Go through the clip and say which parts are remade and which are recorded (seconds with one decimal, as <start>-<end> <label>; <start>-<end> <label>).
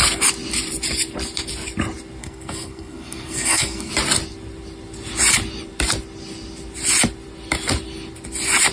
0.0-2.2 recorded; 2.2-3.9 remade; 3.9-8.7 recorded